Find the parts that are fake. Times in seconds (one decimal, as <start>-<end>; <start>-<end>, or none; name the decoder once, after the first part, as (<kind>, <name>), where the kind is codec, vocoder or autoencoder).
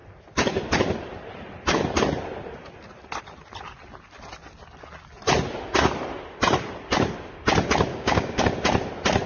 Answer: 7.9-8.4 (codec, DAC)